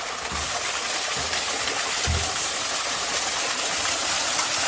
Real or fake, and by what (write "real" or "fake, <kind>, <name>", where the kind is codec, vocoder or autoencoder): real